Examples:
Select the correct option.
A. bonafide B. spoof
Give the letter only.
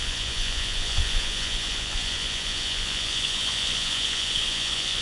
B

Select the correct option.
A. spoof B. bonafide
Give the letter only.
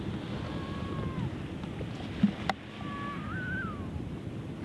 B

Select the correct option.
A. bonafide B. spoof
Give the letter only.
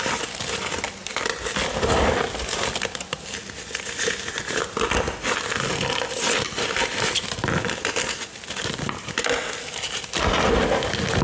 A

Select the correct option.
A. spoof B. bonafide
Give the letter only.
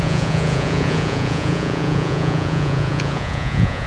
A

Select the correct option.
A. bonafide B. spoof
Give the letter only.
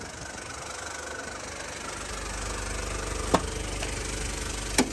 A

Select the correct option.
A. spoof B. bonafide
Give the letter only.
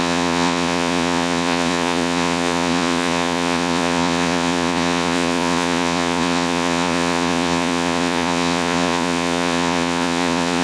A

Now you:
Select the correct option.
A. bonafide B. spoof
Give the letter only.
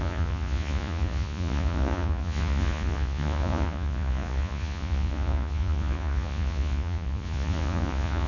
B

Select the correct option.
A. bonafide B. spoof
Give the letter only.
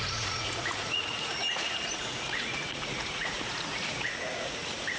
B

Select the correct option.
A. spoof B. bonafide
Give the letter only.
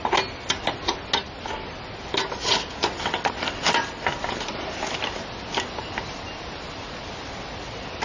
B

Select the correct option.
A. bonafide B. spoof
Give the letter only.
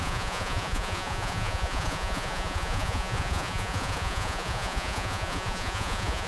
B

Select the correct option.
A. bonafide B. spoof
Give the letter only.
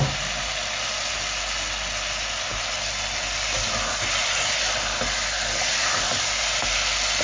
A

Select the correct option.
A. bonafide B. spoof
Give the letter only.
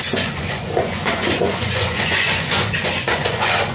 B